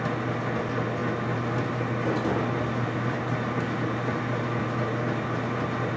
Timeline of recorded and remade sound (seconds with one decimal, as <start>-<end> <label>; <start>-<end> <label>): 0.0-6.0 recorded